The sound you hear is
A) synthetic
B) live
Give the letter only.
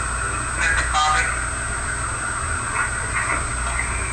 B